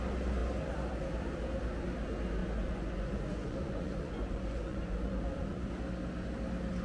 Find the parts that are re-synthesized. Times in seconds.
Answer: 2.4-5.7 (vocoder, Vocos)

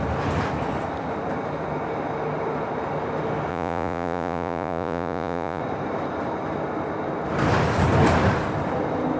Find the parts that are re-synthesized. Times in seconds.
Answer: 3.5-5.6 (vocoder, Vocos)

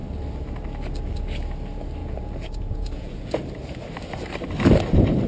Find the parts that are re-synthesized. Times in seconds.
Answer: 2.0-3.4 (vocoder, Vocos)

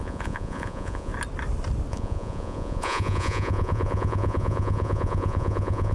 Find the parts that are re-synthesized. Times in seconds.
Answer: 0.0-1.1 (vocoder, Vocos); 1.9-5.9

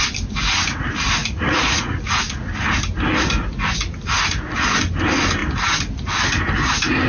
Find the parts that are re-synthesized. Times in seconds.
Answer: 1.2-2.2 (vocoder, Vocos)

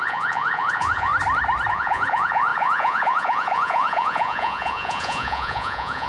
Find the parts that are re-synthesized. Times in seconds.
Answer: 0.0-1.1 (vocoder, Vocos); 1.7-6.1